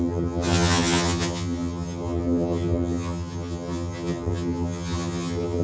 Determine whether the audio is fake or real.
fake